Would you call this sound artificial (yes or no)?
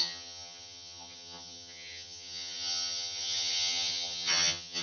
yes